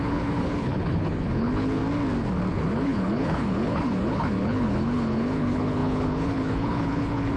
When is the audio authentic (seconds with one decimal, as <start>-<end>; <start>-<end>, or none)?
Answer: 1.8-2.5